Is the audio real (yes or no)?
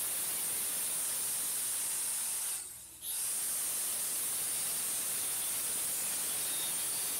yes